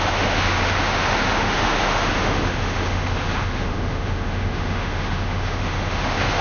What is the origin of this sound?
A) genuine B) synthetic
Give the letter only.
B